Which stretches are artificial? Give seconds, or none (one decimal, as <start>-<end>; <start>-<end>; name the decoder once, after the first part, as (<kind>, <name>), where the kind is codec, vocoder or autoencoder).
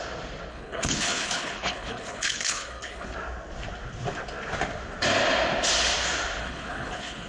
0.5-3.1 (codec, HILCodec); 6.4-7.3